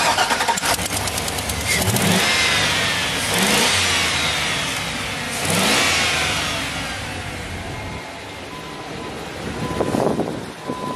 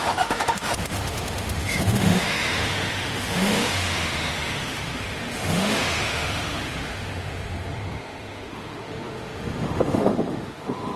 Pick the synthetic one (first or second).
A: second